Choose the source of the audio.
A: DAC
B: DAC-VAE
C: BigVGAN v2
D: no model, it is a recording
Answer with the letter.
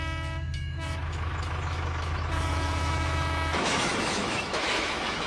B